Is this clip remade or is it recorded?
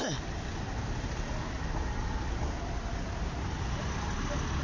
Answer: recorded